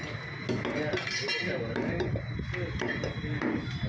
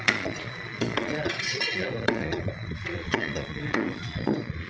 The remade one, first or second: second